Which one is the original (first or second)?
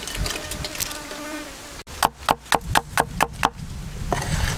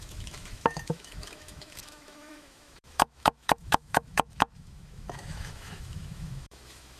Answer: first